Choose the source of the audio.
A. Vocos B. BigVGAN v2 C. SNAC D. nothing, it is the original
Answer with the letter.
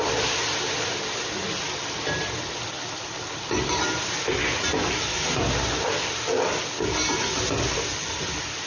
D